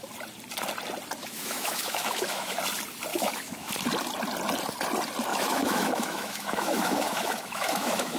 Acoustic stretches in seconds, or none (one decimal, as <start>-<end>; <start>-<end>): 0.0-1.2; 2.6-3.1; 3.7-5.3